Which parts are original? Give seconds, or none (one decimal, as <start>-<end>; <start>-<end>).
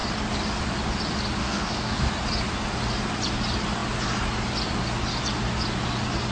0.0-1.4; 2.1-6.3